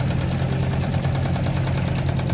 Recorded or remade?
recorded